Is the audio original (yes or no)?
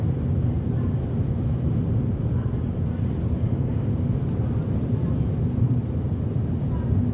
yes